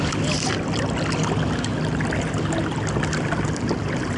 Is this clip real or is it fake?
real